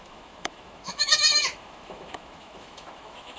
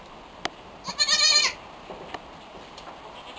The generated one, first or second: first